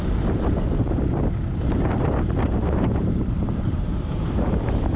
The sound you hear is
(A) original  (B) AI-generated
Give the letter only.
B